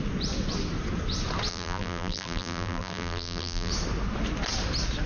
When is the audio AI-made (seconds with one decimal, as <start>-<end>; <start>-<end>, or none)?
1.5-3.7